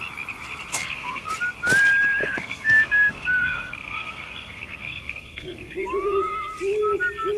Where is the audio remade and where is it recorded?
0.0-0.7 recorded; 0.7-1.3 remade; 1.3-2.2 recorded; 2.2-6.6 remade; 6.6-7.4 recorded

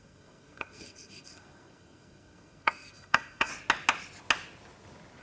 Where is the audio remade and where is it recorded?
0.0-3.5 remade; 3.5-5.2 recorded